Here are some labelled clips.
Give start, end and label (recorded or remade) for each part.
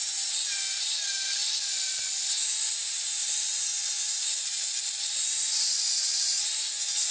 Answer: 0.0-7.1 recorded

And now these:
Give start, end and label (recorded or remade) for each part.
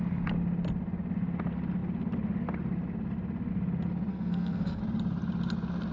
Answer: 0.0-4.1 recorded; 4.1-4.8 remade; 4.8-5.9 recorded